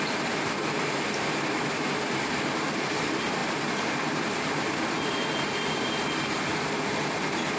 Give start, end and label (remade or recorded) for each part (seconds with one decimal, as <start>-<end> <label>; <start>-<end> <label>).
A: 0.0-7.6 recorded